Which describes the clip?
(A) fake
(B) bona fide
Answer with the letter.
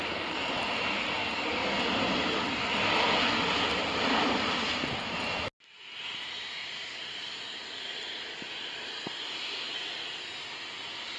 B